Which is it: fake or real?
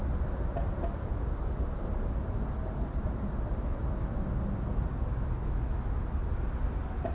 real